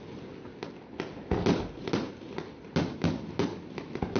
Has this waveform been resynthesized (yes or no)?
no